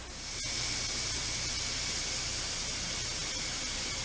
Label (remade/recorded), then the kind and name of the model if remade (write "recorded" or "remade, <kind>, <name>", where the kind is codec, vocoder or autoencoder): recorded